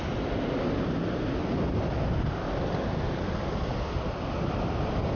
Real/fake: real